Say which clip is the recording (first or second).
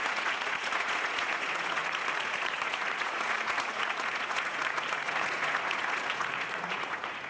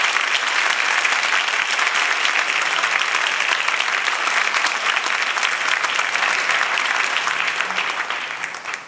second